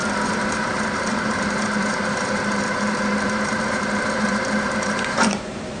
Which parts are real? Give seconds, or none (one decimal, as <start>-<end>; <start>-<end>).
0.0-0.5